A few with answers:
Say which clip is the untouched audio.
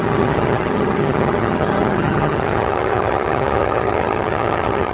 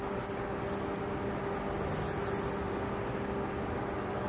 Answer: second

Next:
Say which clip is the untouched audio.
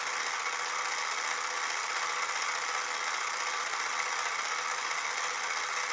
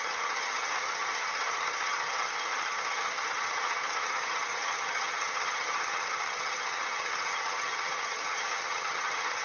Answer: first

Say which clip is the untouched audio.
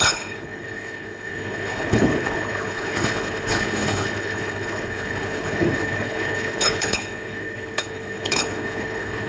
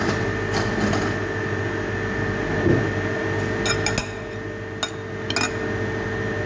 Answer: second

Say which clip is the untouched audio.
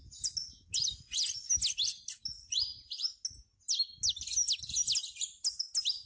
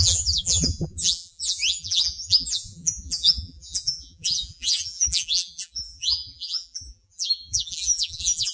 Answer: first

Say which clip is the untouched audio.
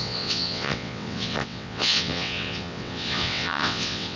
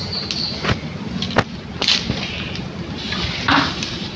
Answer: second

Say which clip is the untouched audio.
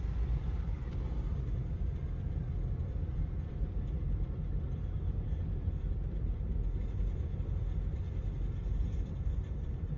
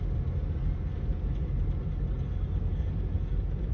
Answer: second